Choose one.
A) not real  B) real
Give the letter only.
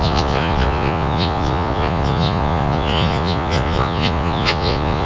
A